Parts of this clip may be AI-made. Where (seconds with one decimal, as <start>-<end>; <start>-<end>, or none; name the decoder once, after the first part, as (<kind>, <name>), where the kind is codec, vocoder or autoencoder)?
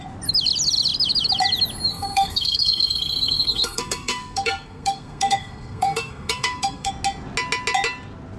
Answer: 1.9-6.9 (codec, SNAC)